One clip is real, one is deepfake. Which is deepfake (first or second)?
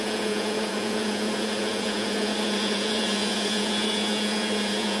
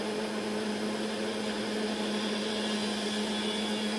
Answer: first